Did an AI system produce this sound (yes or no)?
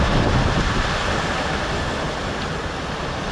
no